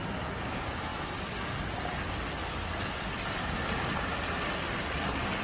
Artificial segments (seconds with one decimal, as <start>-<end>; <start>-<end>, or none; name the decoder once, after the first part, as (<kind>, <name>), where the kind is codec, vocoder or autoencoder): none